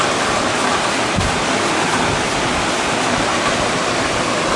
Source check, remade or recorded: recorded